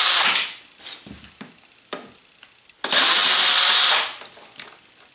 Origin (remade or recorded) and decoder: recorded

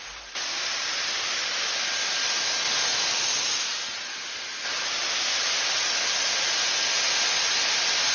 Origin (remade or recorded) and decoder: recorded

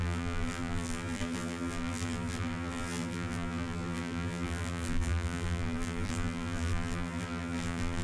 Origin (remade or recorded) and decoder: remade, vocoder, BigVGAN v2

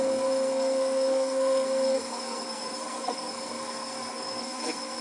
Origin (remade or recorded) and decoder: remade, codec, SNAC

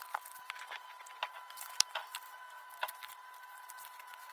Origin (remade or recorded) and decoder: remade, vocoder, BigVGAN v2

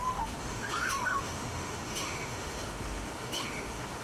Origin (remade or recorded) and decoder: remade, autoencoder, DAC-VAE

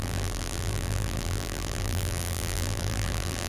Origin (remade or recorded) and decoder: remade, vocoder, BigVGAN v2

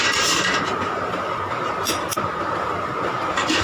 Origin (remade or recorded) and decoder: recorded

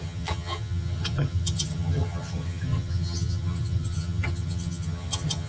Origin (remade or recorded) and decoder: remade, vocoder, HiFi-GAN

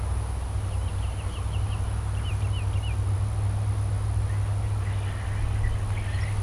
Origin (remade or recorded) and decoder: recorded